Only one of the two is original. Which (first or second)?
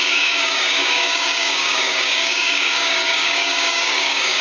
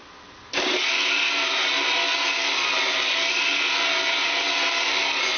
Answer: second